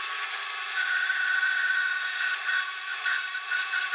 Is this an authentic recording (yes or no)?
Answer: no